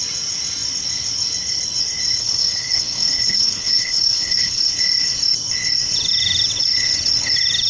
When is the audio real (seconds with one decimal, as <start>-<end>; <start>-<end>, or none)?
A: 0.0-2.2; 4.6-7.7